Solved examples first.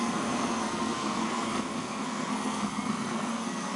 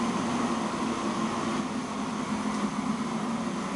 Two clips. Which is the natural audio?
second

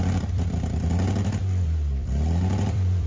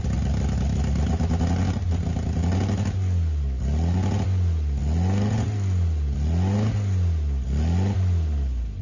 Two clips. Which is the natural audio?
second